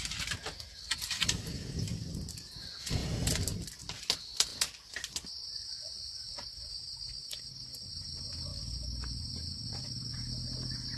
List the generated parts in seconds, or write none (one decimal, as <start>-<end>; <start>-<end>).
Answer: none